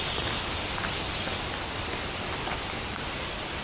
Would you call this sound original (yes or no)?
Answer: yes